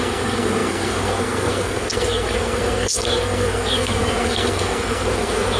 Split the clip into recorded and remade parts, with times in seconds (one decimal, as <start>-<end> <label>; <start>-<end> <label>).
0.0-5.6 remade